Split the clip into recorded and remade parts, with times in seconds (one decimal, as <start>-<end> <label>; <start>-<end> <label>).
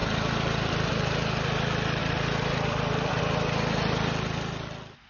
0.0-0.9 remade; 0.9-2.0 recorded; 2.0-3.2 remade; 3.2-5.1 recorded